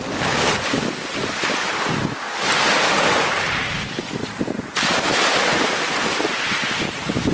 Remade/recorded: recorded